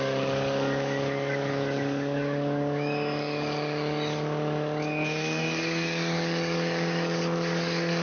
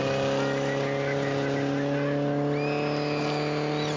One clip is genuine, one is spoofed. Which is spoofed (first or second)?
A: first